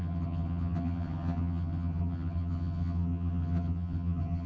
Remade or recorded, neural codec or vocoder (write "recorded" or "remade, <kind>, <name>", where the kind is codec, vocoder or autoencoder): remade, vocoder, HiFi-GAN